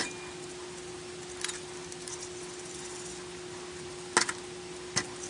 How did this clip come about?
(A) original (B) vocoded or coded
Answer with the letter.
A